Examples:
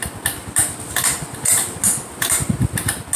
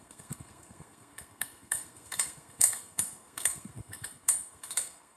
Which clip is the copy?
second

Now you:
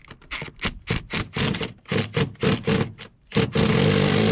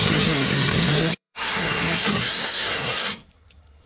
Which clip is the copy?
second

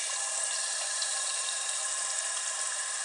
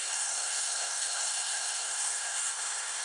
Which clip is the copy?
second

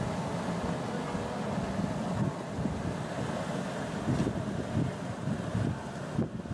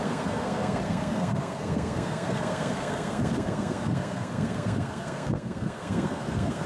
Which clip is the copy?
second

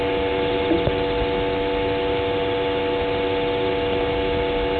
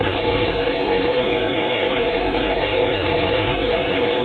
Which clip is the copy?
second